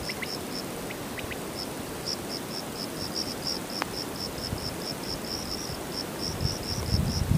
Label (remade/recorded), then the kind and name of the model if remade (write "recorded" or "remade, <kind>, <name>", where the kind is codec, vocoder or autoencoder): recorded